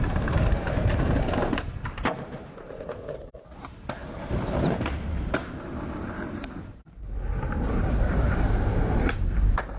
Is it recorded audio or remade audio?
remade